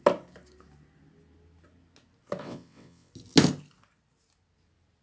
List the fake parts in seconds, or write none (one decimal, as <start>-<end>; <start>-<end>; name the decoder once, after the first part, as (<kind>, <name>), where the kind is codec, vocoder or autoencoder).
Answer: 2.4-3.1 (vocoder, WaveNeXt)